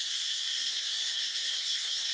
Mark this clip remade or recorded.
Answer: remade